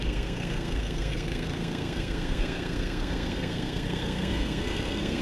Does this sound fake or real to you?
fake